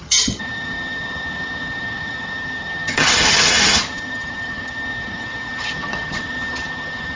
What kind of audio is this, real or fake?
fake